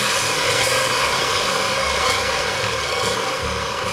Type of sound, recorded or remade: remade